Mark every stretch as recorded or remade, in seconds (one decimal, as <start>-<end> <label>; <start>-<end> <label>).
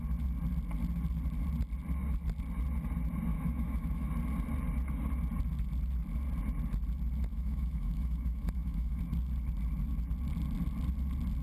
0.0-3.3 recorded; 3.3-4.1 remade; 4.1-7.3 recorded; 7.3-9.0 remade; 9.0-11.4 recorded